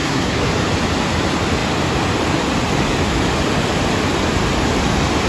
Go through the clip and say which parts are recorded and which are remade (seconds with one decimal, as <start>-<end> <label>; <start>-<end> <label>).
0.0-0.5 remade; 0.5-5.3 recorded